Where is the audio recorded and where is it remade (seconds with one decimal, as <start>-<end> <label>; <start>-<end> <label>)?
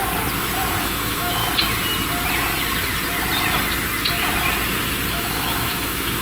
0.0-0.8 recorded; 0.8-1.4 remade; 1.4-5.1 recorded; 5.1-6.2 remade